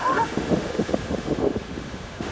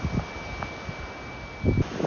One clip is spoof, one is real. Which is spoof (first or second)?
first